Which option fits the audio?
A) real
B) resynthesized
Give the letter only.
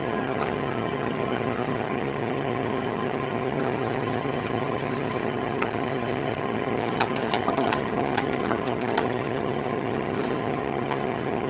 B